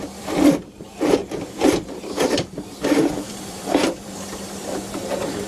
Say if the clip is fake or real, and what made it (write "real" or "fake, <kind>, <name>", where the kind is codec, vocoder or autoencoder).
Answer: fake, vocoder, BigVGAN v2